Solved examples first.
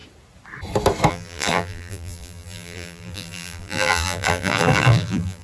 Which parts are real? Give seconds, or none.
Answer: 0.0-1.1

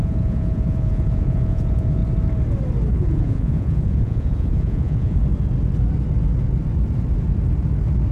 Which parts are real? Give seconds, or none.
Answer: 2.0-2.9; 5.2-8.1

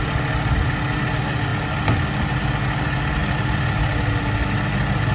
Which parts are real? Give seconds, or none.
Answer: 0.0-5.1

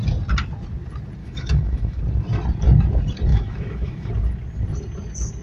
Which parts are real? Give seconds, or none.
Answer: 0.0-1.2; 2.0-3.3; 4.1-5.4